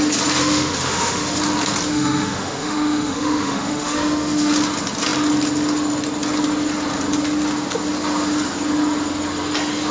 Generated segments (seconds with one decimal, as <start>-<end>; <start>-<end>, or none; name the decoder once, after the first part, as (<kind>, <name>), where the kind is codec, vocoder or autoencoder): 0.4-1.4 (autoencoder, DAC-VAE); 1.9-4.5